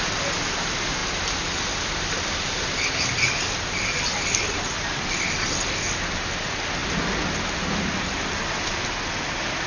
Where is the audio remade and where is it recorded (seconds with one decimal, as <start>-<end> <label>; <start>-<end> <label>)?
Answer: 0.0-9.7 recorded